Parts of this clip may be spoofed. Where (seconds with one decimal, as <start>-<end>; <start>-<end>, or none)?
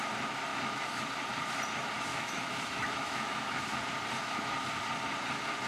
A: 0.5-1.0; 2.1-3.6